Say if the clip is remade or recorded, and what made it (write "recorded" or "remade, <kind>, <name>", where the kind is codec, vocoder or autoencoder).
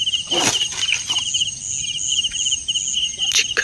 recorded